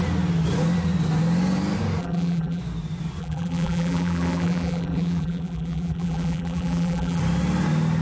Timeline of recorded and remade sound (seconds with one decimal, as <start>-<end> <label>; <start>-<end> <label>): 0.0-2.0 recorded; 2.0-2.6 remade; 2.6-3.2 recorded; 3.2-7.2 remade; 7.2-8.0 recorded